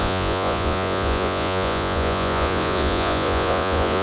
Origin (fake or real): fake